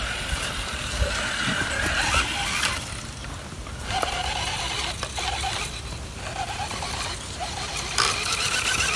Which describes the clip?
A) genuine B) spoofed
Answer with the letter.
A